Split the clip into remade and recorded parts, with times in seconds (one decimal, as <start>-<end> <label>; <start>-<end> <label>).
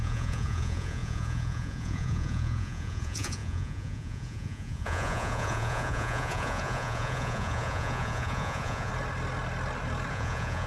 0.0-8.9 remade; 8.9-10.1 recorded; 10.1-10.7 remade